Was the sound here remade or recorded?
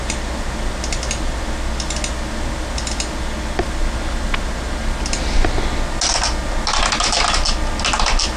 recorded